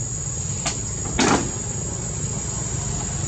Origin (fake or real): real